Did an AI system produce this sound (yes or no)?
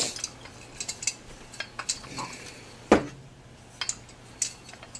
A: no